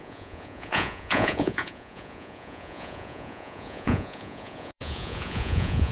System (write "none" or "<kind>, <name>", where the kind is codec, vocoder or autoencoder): vocoder, Vocos